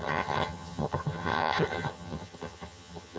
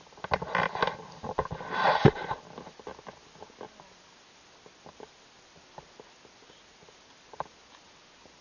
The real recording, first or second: second